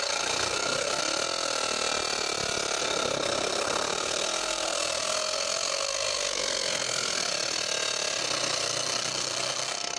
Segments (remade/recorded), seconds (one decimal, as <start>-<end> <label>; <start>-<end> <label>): 0.0-1.0 remade; 1.0-2.8 recorded; 2.8-7.3 remade; 7.3-8.2 recorded; 8.2-10.0 remade